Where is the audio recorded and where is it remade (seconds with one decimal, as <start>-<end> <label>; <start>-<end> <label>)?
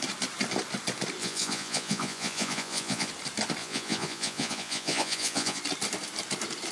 0.0-1.2 recorded; 1.2-3.1 remade; 3.1-3.6 recorded; 3.6-5.6 remade; 5.6-6.7 recorded